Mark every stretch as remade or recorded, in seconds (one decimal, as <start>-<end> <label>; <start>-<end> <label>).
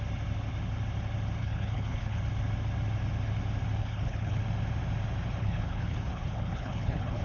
0.0-1.4 recorded; 1.4-2.2 remade; 2.2-3.8 recorded; 3.8-4.4 remade; 4.4-5.4 recorded; 5.4-7.2 remade